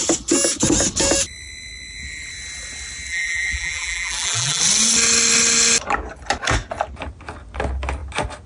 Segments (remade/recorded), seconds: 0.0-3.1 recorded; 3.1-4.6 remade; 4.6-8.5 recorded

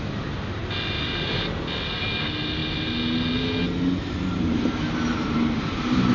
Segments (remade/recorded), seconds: 0.0-4.0 recorded; 4.0-6.1 remade

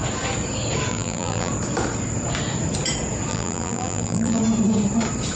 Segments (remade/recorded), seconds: 0.0-0.9 recorded; 0.9-1.5 remade; 1.5-3.3 recorded; 3.3-4.4 remade; 4.4-5.4 recorded

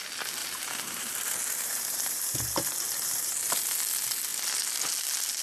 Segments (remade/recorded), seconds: 0.0-0.4 recorded; 0.4-3.6 remade; 3.6-5.4 recorded

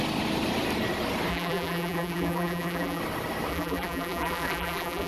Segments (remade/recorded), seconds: 0.0-1.3 recorded; 1.3-3.0 remade; 3.0-3.5 recorded; 3.5-5.1 remade